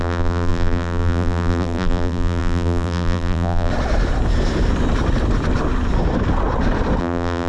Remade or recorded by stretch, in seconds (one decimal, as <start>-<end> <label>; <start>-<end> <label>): 0.0-3.7 remade; 3.7-7.0 recorded; 7.0-7.5 remade